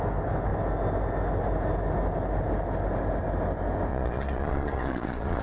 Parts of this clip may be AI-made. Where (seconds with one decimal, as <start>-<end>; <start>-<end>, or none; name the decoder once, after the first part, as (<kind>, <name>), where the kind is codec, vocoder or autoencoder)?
3.9-5.4 (vocoder, Vocos)